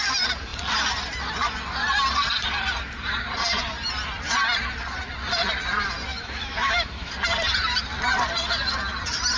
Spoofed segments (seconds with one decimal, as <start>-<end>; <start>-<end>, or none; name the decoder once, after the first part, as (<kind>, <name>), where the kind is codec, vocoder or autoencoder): 6.1-7.1 (autoencoder, DAC-VAE)